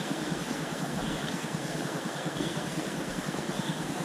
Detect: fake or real fake